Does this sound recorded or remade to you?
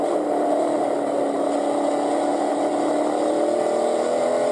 recorded